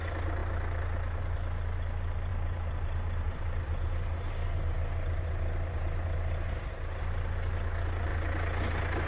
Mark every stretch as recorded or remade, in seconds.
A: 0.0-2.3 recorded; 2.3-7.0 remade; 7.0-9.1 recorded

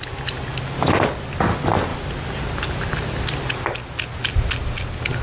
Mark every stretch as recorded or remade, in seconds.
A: 0.0-5.2 recorded

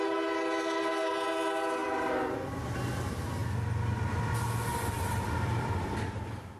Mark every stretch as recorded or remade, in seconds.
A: 0.0-1.8 recorded; 1.8-2.6 remade; 2.6-4.7 recorded; 4.7-6.0 remade; 6.0-6.6 recorded

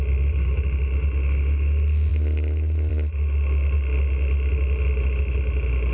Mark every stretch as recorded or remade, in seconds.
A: 0.0-5.9 recorded

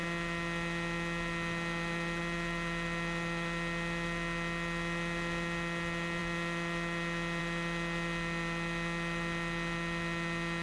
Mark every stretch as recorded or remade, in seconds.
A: 0.0-10.6 recorded

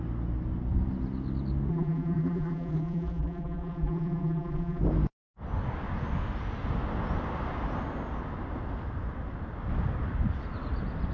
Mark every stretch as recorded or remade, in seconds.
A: 0.0-1.7 recorded; 1.7-4.8 remade; 4.8-11.1 recorded

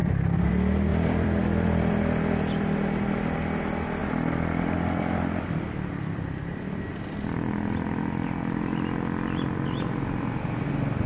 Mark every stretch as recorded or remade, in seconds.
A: 0.0-0.5 remade; 0.5-0.9 recorded; 0.9-1.9 remade; 1.9-4.0 recorded; 4.0-6.9 remade; 6.9-11.1 recorded